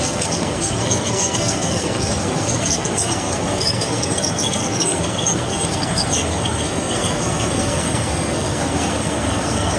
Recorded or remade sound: remade